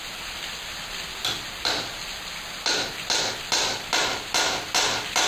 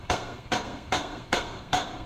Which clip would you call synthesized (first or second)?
second